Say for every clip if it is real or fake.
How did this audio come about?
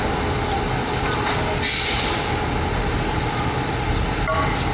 real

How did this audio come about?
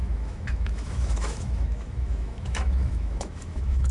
fake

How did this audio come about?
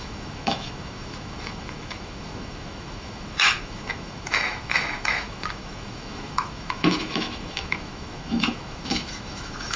fake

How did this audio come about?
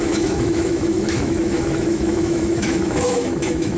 fake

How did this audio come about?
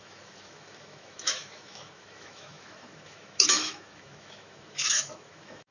fake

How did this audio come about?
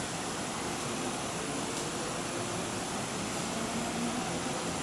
real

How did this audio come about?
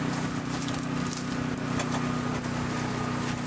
real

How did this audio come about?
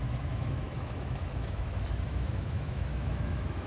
fake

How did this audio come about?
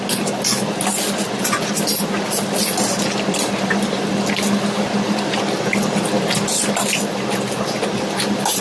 real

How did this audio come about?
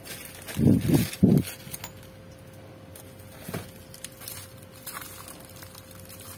real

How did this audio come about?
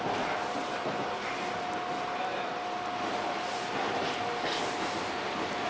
real